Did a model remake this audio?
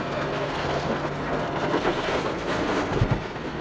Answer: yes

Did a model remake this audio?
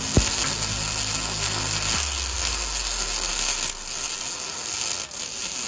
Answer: no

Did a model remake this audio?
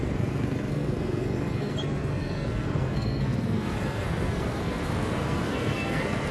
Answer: yes